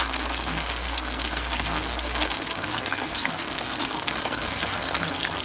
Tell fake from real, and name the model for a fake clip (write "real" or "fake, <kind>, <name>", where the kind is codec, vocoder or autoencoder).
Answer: fake, codec, SNAC